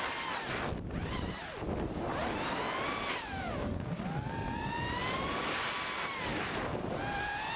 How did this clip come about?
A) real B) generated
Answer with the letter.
A